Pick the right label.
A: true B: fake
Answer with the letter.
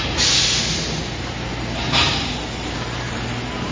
A